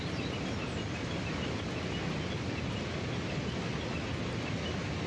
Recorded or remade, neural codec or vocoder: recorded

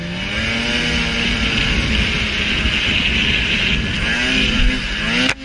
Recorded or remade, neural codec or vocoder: recorded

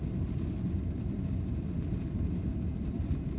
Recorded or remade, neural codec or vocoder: remade, vocoder, BigVGAN v2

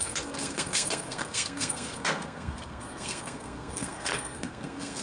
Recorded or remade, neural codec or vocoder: remade, codec, SNAC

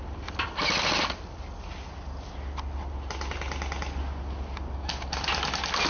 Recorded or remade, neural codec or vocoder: recorded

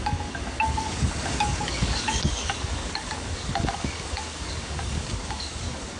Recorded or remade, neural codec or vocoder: remade, codec, DAC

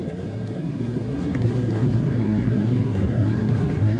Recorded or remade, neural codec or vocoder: remade, codec, SNAC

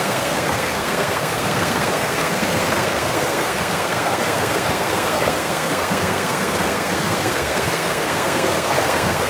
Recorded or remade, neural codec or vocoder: remade, codec, SNAC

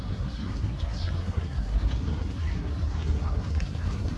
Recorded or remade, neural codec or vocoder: remade, codec, SNAC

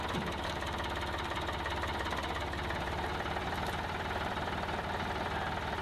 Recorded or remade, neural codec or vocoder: remade, vocoder, BigVGAN v2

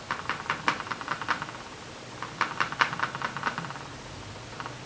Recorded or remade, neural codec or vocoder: recorded